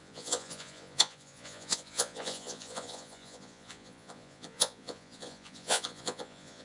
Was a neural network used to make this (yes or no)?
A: yes